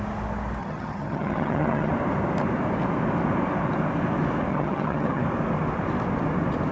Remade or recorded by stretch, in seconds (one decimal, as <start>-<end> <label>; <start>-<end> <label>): 0.0-0.6 recorded; 0.6-1.9 remade; 1.9-4.5 recorded; 4.5-5.2 remade; 5.2-6.7 recorded